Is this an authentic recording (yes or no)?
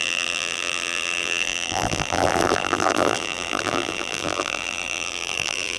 no